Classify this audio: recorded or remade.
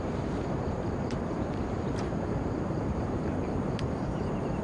remade